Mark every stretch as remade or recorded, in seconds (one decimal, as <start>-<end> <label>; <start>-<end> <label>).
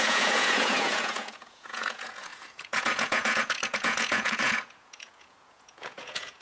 0.0-6.4 remade